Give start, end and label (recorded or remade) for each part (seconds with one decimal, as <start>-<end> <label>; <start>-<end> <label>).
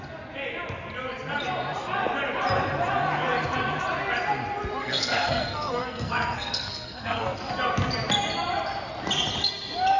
0.0-4.8 recorded; 4.8-7.5 remade; 7.5-10.0 recorded